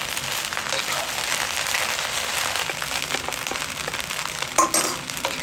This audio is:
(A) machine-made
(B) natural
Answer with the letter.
B